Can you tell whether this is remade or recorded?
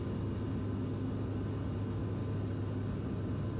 recorded